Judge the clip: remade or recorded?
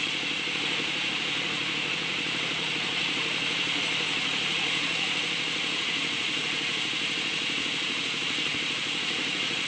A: remade